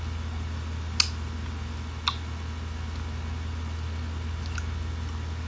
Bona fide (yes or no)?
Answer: yes